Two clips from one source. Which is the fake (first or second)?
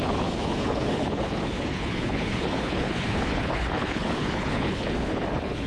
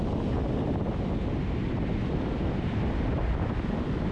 first